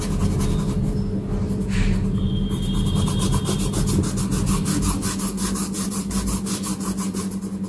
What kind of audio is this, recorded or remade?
recorded